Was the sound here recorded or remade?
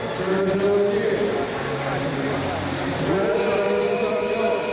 recorded